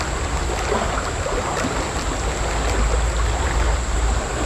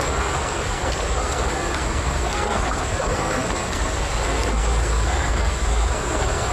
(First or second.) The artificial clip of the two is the second